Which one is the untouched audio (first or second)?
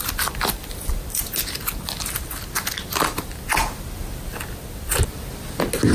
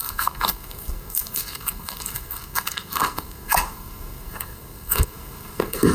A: first